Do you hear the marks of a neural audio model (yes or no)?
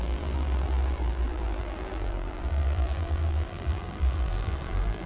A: yes